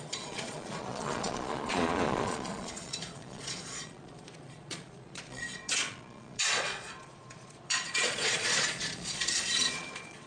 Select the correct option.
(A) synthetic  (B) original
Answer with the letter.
A